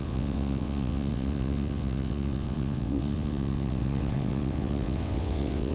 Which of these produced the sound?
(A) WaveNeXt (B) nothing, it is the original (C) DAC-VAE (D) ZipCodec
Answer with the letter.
A